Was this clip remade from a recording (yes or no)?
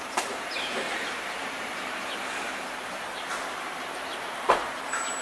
yes